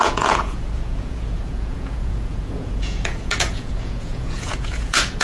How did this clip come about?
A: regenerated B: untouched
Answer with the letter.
A